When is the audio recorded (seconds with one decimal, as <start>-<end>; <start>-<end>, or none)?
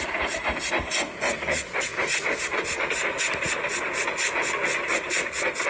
0.0-5.7